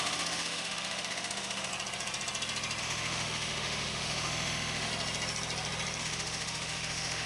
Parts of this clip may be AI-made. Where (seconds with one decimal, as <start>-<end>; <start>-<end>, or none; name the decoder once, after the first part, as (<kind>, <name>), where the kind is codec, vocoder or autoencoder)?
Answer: 0.0-1.7 (autoencoder, DAC-VAE); 2.8-4.9; 6.0-7.3